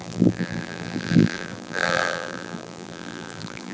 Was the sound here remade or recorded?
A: remade